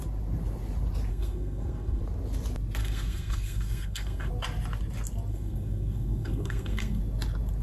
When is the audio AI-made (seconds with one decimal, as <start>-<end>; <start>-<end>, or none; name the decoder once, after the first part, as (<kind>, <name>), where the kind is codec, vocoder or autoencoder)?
1.1-2.0 (codec, SNAC); 2.8-4.3; 5.3-7.0